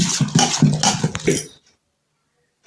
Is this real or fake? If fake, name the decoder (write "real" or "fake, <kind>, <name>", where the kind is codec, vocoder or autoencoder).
real